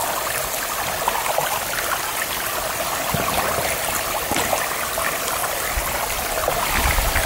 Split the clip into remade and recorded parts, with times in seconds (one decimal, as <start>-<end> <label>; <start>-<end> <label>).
0.0-7.3 recorded